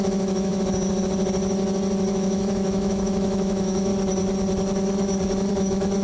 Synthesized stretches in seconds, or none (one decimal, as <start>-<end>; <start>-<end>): 0.0-0.5; 2.1-3.9; 5.5-6.0